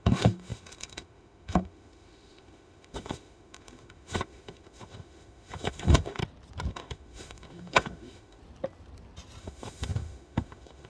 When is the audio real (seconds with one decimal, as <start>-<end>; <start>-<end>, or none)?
6.2-6.7; 8.4-9.4